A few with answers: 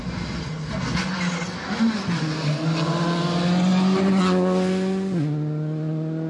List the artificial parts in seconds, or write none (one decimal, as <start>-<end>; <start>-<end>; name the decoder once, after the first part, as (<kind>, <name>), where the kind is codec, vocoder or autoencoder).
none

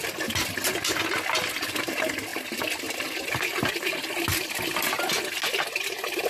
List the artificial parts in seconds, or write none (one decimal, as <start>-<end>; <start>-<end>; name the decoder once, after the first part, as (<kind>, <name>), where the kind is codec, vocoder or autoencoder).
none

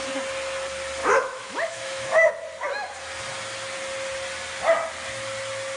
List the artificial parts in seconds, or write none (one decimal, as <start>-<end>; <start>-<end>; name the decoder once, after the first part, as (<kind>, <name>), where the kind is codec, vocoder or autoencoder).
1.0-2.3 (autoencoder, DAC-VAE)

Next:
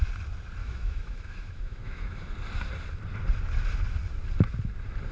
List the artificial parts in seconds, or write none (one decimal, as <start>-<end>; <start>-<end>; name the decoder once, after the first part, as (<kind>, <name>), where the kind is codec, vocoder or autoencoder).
0.6-2.3 (autoencoder, DAC-VAE)

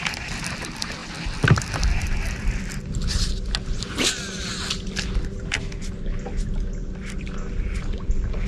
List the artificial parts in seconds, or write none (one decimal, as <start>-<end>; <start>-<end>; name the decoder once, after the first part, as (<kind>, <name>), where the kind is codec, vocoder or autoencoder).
none

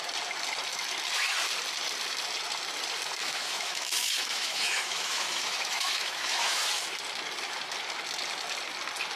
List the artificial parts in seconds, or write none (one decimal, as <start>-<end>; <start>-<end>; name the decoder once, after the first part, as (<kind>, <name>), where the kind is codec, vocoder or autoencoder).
3.2-6.6 (autoencoder, DAC-VAE)